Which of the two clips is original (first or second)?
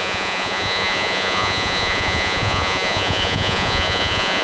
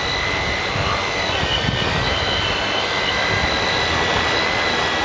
second